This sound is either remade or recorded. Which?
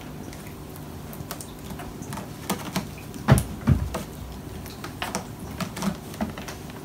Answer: recorded